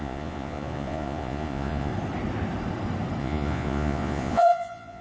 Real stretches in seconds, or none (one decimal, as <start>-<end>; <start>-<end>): 1.9-3.2